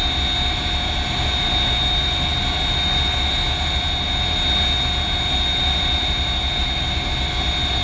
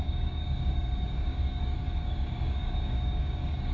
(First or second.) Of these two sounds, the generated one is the second